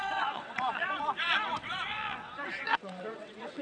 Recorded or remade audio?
remade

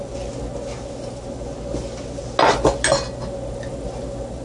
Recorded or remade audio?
recorded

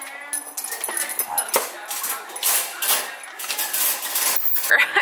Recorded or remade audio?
recorded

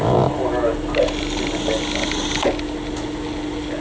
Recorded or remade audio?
recorded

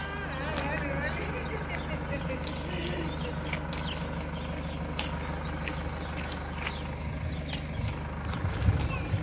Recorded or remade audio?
recorded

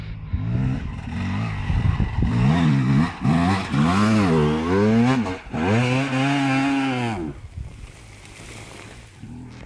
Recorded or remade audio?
recorded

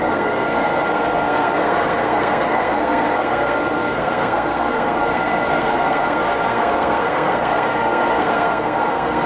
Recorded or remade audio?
remade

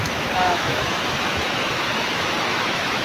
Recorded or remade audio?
remade